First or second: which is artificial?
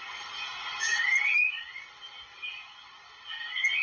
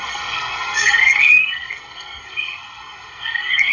second